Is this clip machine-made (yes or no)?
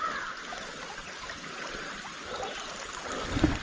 no